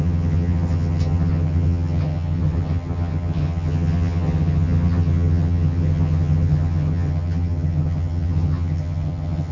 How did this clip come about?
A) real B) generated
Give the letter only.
B